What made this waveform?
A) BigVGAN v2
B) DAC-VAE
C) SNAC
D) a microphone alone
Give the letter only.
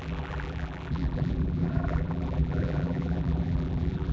A